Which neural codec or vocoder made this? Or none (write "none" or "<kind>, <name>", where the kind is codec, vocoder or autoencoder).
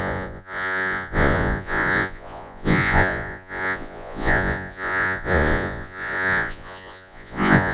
vocoder, Vocos